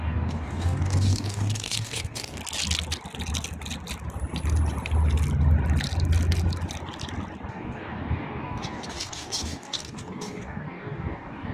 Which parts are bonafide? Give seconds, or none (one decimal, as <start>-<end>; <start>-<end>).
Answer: 2.4-7.5